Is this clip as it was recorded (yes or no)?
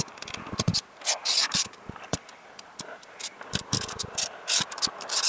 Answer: no